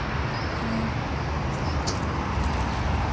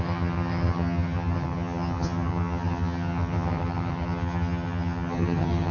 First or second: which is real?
first